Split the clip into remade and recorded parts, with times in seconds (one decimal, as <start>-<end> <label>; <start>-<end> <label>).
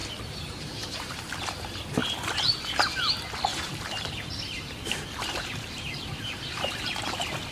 0.0-1.3 remade; 1.3-3.5 recorded; 3.5-7.0 remade; 7.0-7.5 recorded